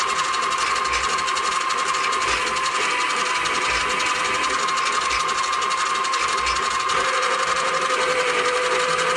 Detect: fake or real real